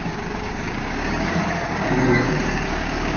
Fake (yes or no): yes